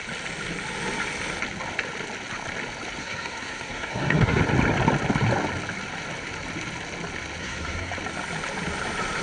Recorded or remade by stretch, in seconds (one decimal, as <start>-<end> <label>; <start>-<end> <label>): 0.0-3.0 recorded; 3.0-4.4 remade; 4.4-7.4 recorded; 7.4-7.9 remade; 7.9-9.2 recorded